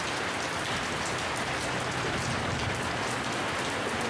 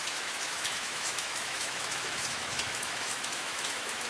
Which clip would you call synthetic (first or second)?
second